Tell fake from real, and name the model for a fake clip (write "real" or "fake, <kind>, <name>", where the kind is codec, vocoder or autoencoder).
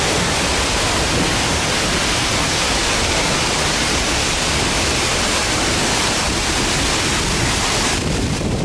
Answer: real